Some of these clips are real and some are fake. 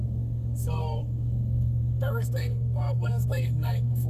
fake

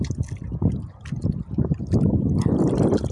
real